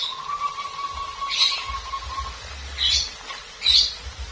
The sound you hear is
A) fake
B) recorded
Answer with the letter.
B